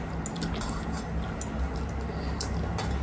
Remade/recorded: recorded